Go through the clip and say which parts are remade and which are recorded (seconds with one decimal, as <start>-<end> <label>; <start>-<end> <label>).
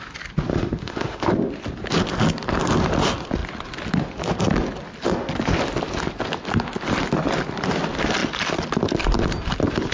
0.0-0.5 recorded; 0.5-1.3 remade; 1.3-9.9 recorded